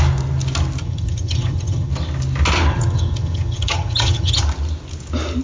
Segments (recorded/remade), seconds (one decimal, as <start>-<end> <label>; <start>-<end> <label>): 0.0-0.8 recorded; 0.8-1.9 remade; 1.9-2.7 recorded; 2.7-4.4 remade; 4.4-5.4 recorded